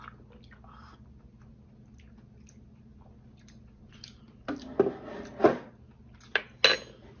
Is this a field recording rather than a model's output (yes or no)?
yes